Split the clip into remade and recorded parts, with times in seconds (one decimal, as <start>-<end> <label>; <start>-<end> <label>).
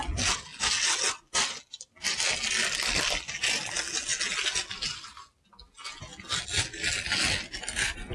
0.0-8.1 recorded